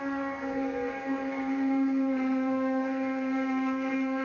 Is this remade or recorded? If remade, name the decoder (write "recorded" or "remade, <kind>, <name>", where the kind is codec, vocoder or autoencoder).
remade, codec, SNAC